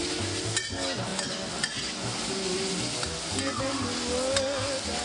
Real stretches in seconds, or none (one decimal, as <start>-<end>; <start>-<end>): 0.0-5.0